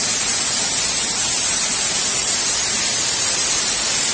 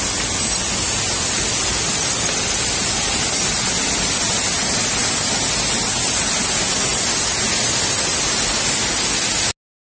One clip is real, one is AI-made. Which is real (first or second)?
second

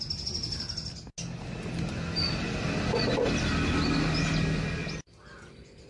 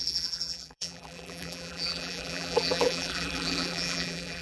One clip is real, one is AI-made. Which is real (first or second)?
first